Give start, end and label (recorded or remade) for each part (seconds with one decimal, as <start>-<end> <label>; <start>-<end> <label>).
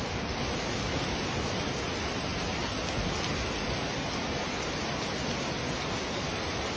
0.0-6.8 recorded